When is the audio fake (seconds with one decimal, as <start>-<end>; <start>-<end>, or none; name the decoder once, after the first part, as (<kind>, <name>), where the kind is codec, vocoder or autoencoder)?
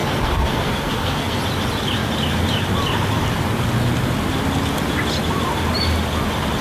0.0-1.4 (codec, SNAC)